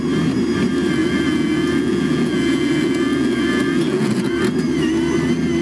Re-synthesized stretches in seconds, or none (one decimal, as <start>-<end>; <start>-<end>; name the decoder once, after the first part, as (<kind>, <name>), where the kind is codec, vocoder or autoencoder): 1.0-4.4 (vocoder, Vocos)